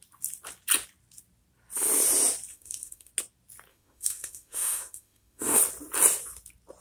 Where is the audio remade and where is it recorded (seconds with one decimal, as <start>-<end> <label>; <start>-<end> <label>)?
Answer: 0.0-2.5 recorded; 2.5-3.1 remade; 3.1-3.7 recorded; 3.7-5.6 remade; 5.6-6.8 recorded